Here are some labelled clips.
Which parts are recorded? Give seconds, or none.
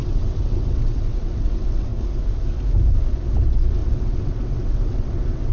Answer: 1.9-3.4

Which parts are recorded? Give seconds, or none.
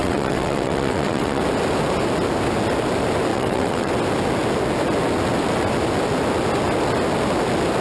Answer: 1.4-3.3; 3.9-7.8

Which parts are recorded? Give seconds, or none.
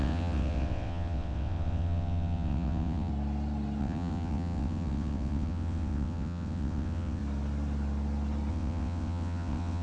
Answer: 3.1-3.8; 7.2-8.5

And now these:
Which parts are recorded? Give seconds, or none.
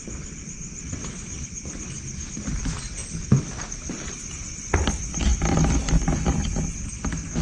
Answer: 0.0-0.9; 1.5-7.4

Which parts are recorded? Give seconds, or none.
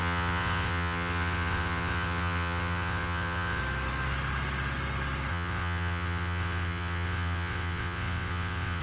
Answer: 3.6-5.3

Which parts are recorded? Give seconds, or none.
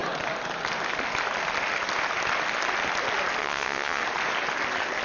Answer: 0.0-3.4; 4.0-5.0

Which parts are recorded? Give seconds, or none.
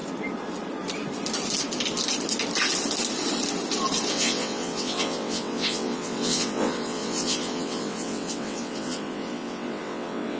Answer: 0.0-4.1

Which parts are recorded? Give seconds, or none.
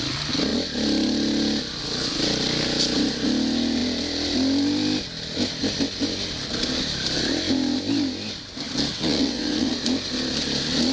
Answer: 0.0-8.9; 9.7-10.9